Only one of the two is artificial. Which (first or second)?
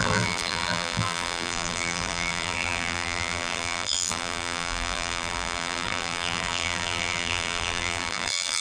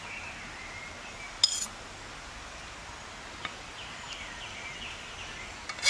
first